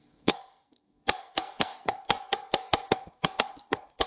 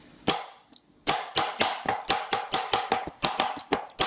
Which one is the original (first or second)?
second